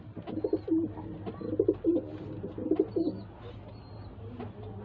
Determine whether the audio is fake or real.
real